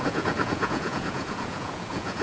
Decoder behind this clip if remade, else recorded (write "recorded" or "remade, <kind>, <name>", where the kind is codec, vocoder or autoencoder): remade, vocoder, Vocos